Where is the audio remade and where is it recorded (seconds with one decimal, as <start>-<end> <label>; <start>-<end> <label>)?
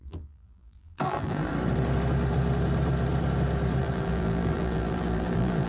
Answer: 0.0-1.5 remade; 1.5-3.8 recorded; 3.8-5.7 remade